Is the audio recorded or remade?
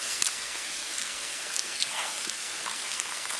remade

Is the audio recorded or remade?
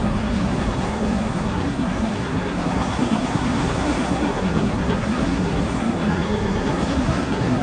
remade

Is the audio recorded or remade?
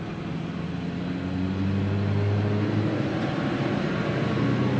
recorded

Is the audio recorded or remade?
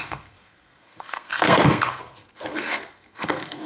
remade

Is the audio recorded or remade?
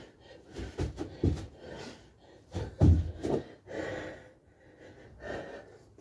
recorded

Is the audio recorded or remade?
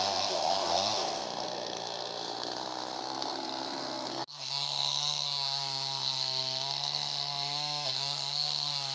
remade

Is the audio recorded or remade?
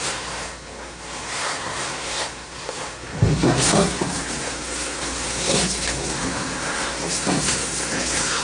remade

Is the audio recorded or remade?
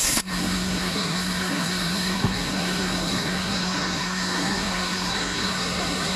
remade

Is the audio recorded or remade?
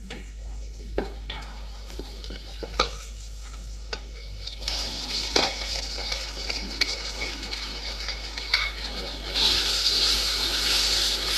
remade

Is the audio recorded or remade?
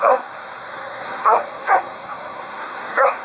remade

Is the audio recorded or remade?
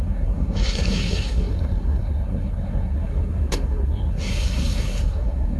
remade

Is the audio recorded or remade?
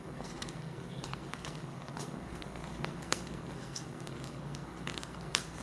remade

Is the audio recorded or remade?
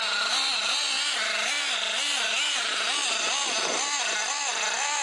recorded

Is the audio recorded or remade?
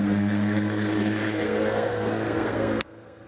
remade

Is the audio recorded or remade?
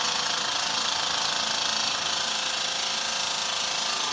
recorded